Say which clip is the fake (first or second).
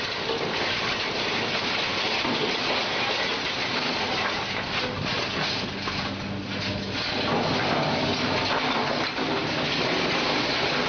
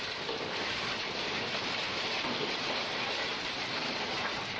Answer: second